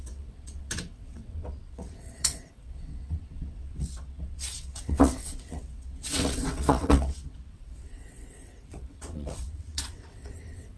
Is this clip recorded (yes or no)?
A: no